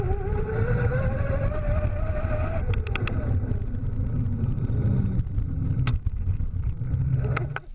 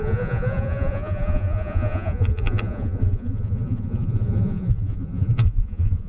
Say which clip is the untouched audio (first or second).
first